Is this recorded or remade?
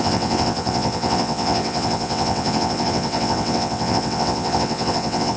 remade